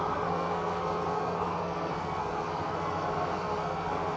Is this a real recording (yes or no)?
no